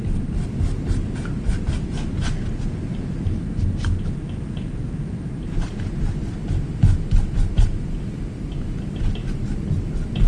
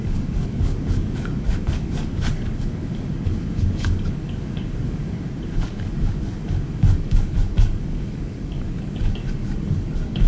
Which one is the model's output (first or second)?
second